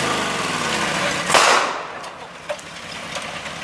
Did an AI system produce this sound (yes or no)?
no